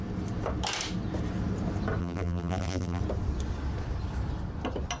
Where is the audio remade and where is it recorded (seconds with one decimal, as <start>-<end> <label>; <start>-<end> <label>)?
0.0-2.0 recorded; 2.0-3.0 remade; 3.0-5.0 recorded

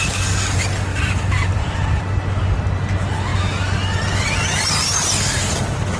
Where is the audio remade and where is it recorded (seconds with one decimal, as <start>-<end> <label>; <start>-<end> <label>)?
0.0-0.9 recorded; 0.9-2.0 remade; 2.0-6.0 recorded